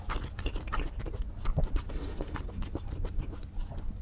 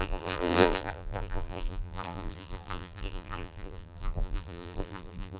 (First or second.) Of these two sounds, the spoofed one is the second